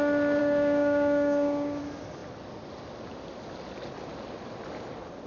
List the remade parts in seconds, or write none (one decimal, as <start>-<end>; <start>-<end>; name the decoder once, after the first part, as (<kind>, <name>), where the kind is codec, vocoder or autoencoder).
0.4-1.8 (codec, DAC)